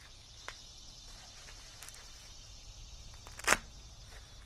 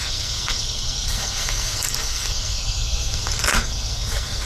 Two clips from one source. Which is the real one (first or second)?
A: first